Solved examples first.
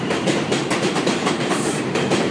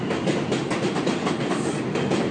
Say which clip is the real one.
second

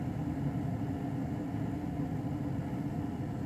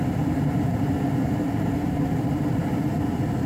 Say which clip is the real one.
first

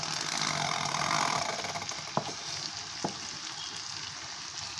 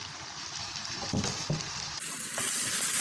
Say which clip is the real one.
first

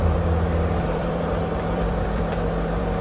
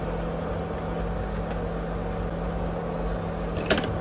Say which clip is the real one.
second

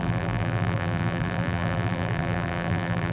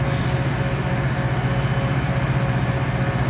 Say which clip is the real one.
second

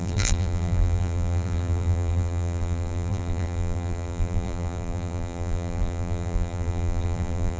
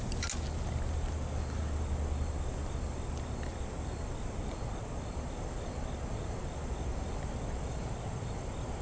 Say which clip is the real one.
second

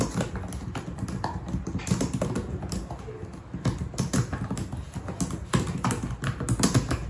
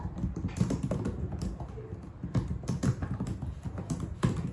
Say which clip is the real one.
first